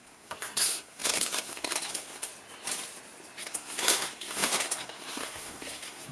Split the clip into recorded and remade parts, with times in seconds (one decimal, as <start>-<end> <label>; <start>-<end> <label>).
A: 0.0-2.3 remade; 2.3-3.4 recorded; 3.4-6.1 remade

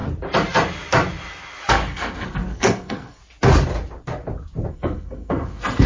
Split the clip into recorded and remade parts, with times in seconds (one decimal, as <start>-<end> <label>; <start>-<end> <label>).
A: 0.0-1.7 recorded; 1.7-3.2 remade; 3.2-4.7 recorded; 4.7-5.9 remade

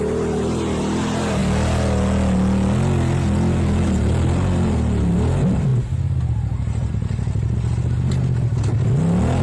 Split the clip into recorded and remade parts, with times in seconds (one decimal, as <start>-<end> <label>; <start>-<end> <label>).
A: 0.0-9.4 recorded

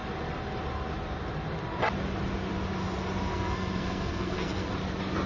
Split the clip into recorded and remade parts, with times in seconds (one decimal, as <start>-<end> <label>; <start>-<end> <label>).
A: 0.0-3.3 recorded; 3.3-4.7 remade; 4.7-5.3 recorded

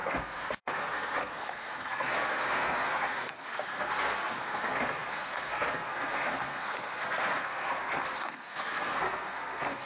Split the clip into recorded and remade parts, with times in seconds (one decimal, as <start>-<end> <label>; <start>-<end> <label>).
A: 0.0-9.8 remade

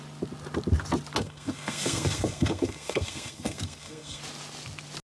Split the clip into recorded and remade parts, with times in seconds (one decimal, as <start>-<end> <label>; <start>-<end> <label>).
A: 0.0-1.2 recorded; 1.2-4.2 remade; 4.2-5.0 recorded